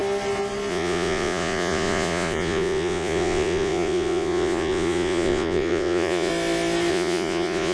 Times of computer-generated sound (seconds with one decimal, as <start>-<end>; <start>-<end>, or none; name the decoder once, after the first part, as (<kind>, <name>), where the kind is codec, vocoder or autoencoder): 0.7-6.3 (vocoder, Vocos); 6.9-7.7